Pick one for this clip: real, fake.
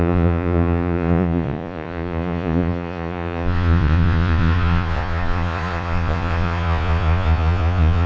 fake